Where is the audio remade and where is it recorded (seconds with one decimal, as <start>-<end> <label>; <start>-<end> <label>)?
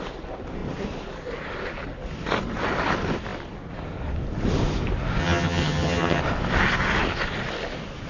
0.0-5.2 recorded; 5.2-6.2 remade; 6.2-8.1 recorded